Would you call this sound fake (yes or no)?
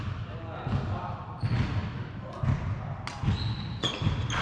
no